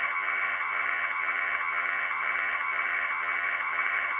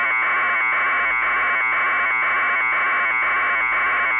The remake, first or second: first